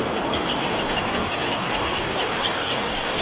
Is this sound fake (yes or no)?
yes